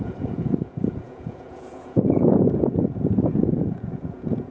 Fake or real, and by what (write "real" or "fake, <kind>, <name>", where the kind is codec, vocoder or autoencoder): fake, vocoder, Vocos